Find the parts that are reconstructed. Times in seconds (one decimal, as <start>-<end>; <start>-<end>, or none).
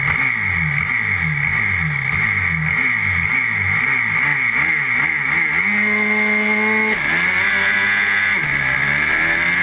none